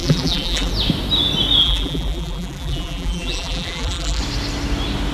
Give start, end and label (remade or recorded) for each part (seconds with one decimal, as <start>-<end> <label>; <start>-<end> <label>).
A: 0.0-0.7 remade; 0.7-1.6 recorded; 1.6-4.2 remade; 4.2-5.1 recorded